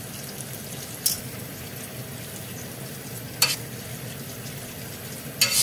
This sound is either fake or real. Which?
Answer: real